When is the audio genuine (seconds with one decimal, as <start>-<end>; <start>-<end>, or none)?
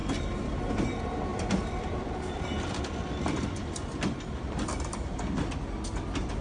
0.7-1.3; 5.1-6.4